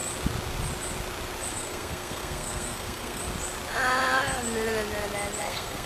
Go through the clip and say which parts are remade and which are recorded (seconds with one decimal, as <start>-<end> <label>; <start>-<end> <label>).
0.0-1.5 recorded; 1.5-3.2 remade; 3.2-5.4 recorded; 5.4-5.9 remade